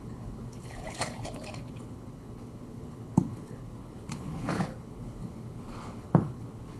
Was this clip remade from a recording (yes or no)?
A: yes